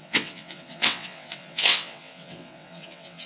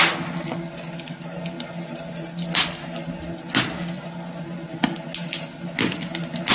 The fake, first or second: first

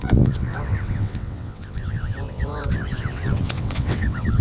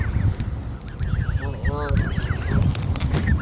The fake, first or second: first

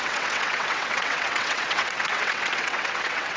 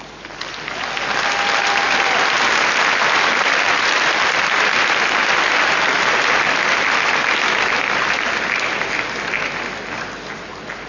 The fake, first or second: first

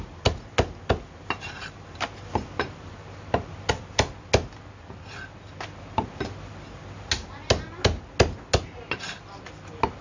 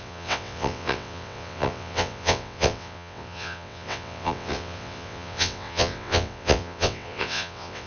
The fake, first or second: second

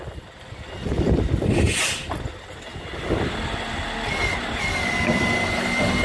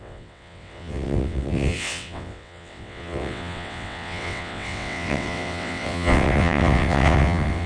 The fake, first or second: second